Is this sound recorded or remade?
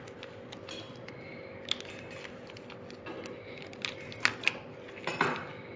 recorded